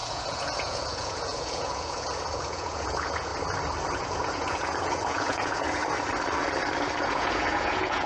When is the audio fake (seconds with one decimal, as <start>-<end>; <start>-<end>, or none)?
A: 0.0-3.3; 4.0-5.8; 7.0-8.1